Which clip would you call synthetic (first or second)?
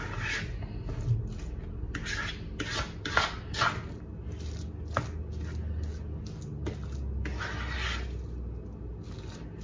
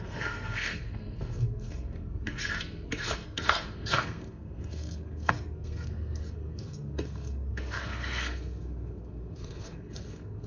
second